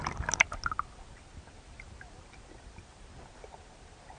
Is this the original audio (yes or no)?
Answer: yes